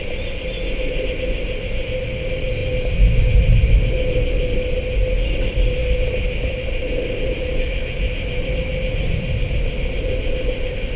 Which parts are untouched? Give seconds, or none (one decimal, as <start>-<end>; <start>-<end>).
0.0-11.0